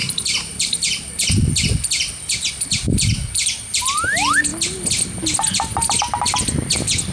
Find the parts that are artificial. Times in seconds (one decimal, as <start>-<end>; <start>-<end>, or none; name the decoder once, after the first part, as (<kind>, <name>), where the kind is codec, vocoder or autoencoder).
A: 0.0-4.5 (vocoder, BigVGAN v2); 6.2-7.1